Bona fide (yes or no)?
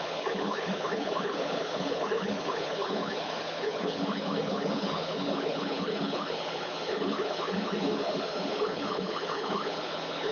no